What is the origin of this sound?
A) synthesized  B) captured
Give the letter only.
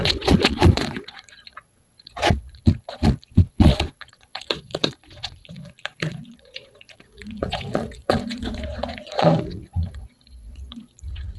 A